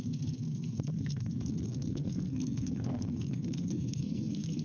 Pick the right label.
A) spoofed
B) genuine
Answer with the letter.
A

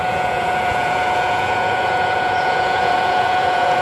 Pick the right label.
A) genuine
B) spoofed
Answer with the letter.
B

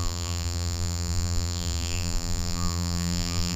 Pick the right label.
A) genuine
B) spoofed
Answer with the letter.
B